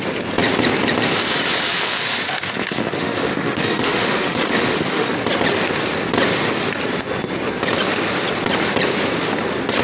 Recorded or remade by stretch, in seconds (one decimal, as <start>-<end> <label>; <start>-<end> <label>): 0.0-2.0 recorded; 2.0-5.1 remade; 5.1-9.8 recorded